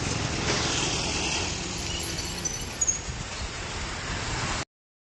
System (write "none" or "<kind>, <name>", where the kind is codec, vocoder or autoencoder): none